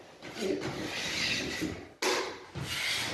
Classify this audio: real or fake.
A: real